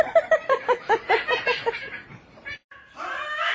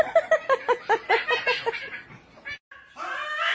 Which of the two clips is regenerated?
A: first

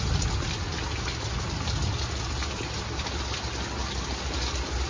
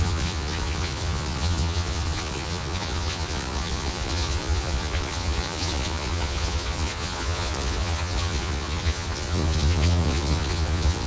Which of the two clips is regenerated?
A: second